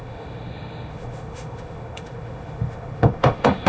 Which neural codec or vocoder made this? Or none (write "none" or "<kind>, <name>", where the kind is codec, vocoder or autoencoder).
autoencoder, DAC-VAE